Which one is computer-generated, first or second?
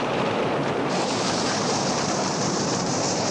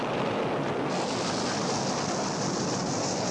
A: first